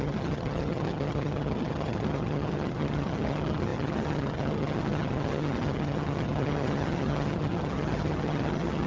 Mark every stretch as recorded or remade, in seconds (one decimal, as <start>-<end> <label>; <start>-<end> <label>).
0.0-8.9 remade